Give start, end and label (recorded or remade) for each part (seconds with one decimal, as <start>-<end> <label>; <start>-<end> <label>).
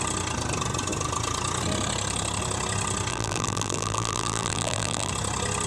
0.0-3.1 recorded; 3.1-5.1 remade; 5.1-5.7 recorded